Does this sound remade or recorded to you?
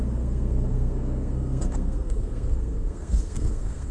remade